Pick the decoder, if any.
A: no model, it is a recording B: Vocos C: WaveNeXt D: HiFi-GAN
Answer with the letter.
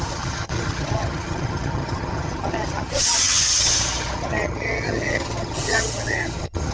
D